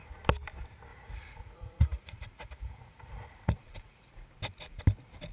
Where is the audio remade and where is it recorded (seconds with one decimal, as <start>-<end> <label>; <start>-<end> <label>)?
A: 0.0-0.9 recorded; 0.9-4.1 remade; 4.1-5.3 recorded

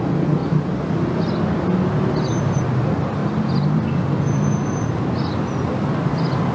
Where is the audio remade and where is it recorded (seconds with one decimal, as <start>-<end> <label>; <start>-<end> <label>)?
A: 0.0-6.5 recorded

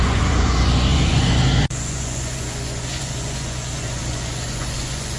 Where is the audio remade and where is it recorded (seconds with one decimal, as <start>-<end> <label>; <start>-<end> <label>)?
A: 0.0-5.2 remade

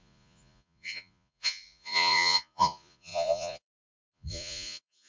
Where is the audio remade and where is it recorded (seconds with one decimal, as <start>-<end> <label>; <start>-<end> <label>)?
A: 0.0-5.1 remade

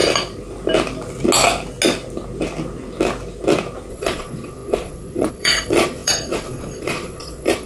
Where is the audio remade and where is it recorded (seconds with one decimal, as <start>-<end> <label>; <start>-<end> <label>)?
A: 0.0-3.9 recorded; 3.9-7.7 remade